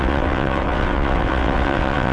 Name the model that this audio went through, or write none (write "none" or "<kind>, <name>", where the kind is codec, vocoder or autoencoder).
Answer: vocoder, WaveNeXt